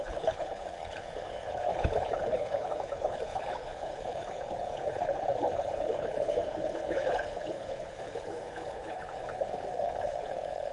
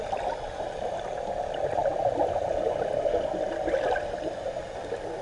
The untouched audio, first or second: second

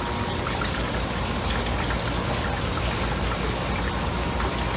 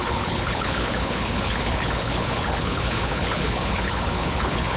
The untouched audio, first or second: first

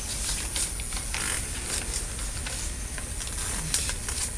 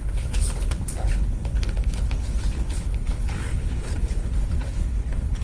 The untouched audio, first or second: first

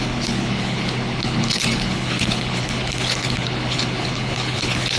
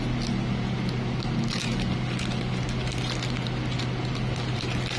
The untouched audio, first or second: second